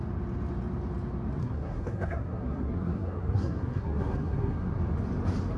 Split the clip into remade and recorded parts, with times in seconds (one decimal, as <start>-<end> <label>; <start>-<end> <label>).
0.0-1.4 recorded; 1.4-4.8 remade; 4.8-5.6 recorded